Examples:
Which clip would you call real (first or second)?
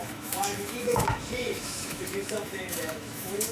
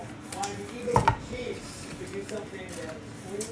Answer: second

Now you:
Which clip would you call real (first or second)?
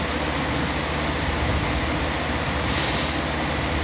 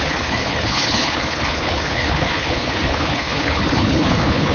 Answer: first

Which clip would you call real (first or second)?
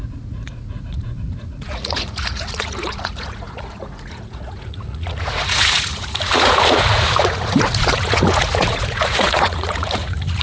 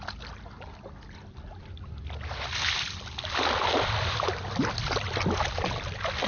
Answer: second